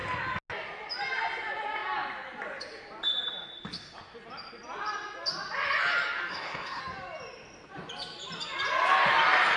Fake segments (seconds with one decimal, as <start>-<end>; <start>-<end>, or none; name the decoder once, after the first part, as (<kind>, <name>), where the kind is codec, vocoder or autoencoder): 6.3-6.8 (codec, SNAC)